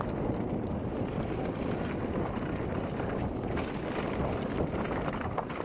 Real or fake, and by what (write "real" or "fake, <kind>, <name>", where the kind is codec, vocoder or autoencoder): real